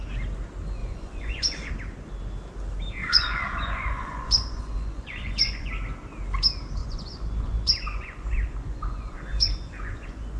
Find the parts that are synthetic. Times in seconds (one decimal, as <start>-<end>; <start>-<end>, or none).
0.8-1.7; 3.0-5.7; 6.8-10.4